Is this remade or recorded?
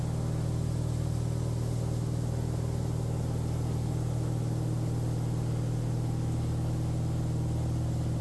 recorded